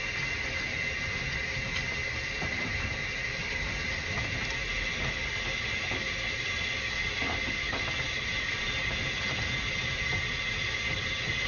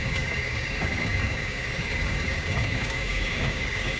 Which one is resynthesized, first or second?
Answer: second